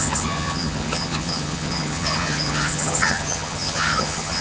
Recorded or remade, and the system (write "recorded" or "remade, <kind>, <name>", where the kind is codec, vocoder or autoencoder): remade, vocoder, HiFi-GAN